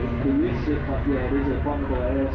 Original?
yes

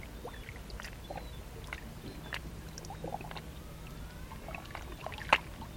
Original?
yes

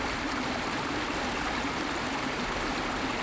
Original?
yes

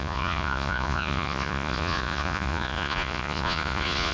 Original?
no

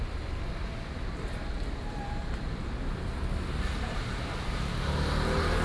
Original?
yes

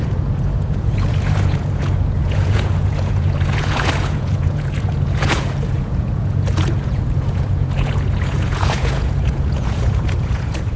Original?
no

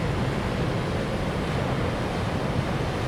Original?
yes